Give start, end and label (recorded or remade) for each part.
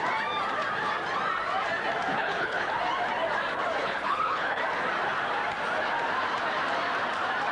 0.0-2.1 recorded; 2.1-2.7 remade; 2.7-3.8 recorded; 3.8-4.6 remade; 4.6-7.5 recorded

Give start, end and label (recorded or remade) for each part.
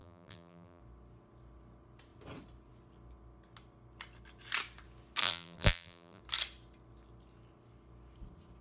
0.0-0.8 remade; 0.8-5.2 recorded; 5.2-6.2 remade; 6.2-8.6 recorded